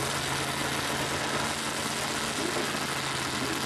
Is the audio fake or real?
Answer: real